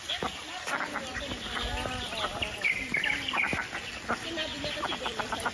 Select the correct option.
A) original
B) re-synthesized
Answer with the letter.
A